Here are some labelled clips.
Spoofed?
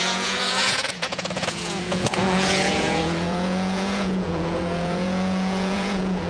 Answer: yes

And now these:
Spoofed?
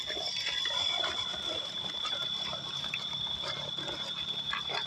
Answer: no